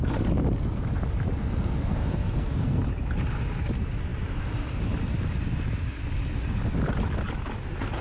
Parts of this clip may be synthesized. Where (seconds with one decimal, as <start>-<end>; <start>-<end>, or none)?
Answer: 1.4-2.8